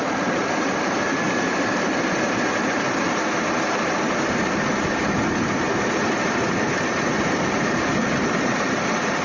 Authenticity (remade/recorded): remade